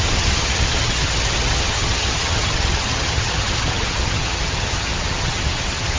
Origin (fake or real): fake